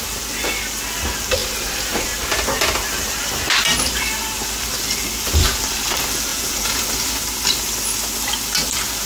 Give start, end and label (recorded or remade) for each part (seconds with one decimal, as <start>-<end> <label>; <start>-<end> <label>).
0.0-6.3 recorded; 6.3-6.8 remade; 6.8-9.1 recorded